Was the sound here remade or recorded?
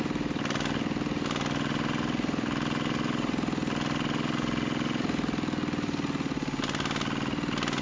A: recorded